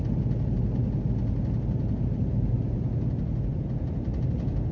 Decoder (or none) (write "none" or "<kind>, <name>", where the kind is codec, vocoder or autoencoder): none